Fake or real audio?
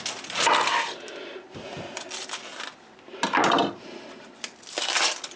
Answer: real